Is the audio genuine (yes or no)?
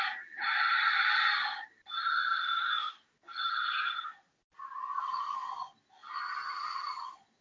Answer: yes